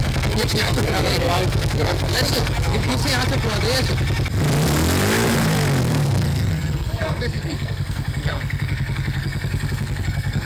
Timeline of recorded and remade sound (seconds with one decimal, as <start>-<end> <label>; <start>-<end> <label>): 0.0-3.0 remade; 3.0-5.8 recorded; 5.8-10.5 remade